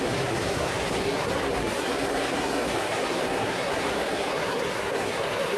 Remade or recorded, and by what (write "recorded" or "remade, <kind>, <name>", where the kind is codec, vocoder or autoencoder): remade, codec, SNAC